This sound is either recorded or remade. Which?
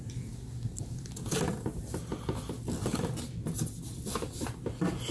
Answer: recorded